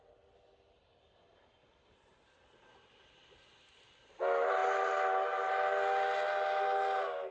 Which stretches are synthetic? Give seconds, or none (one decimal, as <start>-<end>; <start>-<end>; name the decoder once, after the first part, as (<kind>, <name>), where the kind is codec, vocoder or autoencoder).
none